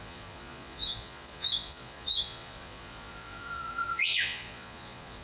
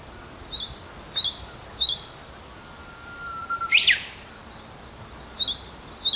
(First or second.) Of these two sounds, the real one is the second